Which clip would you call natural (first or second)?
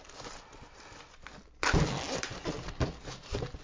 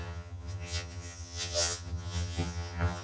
first